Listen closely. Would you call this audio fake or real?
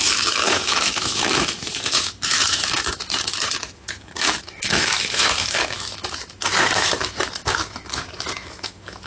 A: fake